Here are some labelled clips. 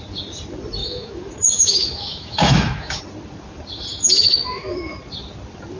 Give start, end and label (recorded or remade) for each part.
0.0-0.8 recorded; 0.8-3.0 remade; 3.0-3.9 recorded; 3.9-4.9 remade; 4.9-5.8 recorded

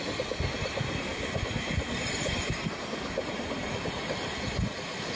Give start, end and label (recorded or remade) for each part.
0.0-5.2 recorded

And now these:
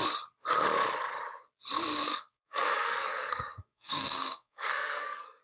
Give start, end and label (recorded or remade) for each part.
0.0-2.1 recorded; 2.1-5.4 remade

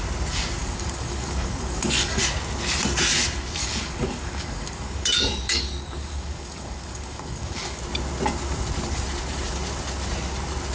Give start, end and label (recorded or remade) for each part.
0.0-0.6 recorded; 0.6-2.2 remade; 2.2-3.6 recorded; 3.6-7.8 remade; 7.8-10.7 recorded